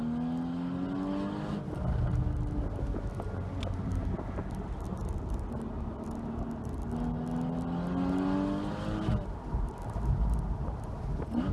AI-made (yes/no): no